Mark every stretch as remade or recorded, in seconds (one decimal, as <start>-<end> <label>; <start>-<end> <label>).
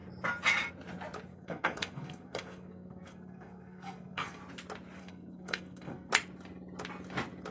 0.0-1.3 recorded; 1.3-4.4 remade; 4.4-5.0 recorded; 5.0-6.1 remade; 6.1-7.5 recorded